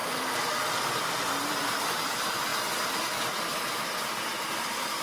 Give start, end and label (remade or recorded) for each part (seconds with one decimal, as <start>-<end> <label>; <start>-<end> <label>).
0.0-5.0 recorded